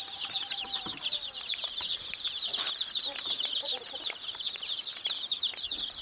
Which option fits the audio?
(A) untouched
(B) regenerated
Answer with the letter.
B